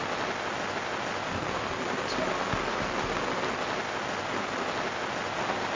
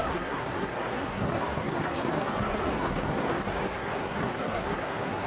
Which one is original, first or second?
first